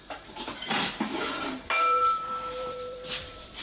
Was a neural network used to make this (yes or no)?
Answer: yes